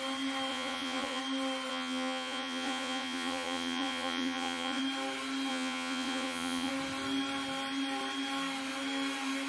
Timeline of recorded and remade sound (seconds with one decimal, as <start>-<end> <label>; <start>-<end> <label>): 0.0-0.5 recorded; 0.5-1.2 remade; 1.2-1.7 recorded; 1.7-4.8 remade; 4.8-5.5 recorded; 5.5-6.7 remade; 6.7-9.5 recorded